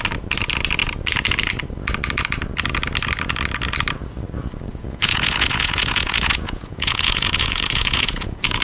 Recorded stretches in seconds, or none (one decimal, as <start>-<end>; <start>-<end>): 0.0-4.7